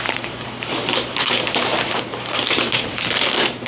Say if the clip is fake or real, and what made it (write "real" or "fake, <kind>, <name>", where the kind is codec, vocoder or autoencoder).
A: fake, vocoder, BigVGAN v2